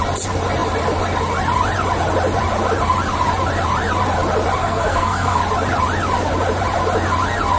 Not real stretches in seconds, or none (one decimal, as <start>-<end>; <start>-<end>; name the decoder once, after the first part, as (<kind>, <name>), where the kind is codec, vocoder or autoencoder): 4.6-5.4 (codec, SNAC)